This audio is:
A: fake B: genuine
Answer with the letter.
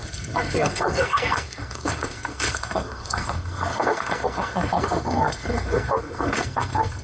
A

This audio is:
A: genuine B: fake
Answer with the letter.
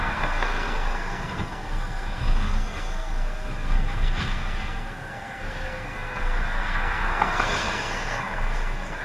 B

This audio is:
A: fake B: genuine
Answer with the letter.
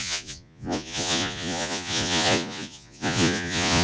A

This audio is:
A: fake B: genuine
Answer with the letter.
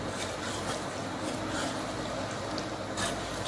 B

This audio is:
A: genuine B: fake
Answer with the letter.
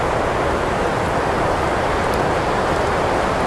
A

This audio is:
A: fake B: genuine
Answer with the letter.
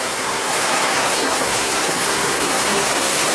A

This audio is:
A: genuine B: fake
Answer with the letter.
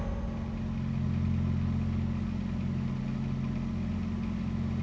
A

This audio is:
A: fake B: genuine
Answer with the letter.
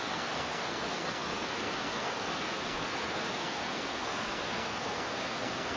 A